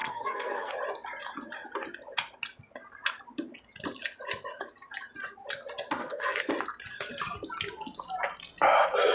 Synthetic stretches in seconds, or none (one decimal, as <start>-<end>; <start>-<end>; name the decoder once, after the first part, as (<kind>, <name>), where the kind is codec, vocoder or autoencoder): 0.0-0.7 (codec, SNAC); 6.0-6.5